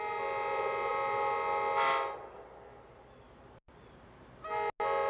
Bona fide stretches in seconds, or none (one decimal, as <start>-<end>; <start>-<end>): 0.0-5.1